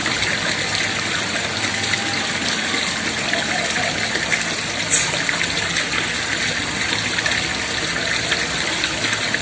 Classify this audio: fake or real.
real